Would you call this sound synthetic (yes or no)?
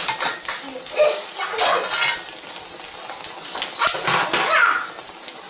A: no